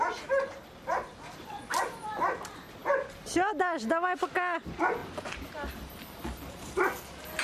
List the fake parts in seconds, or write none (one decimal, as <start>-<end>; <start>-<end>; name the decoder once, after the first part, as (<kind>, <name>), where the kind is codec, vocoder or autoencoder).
2.8-3.3 (vocoder, BigVGAN v2); 5.0-7.0